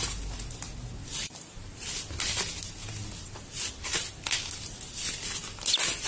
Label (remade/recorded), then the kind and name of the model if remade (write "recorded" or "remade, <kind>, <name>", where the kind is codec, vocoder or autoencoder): recorded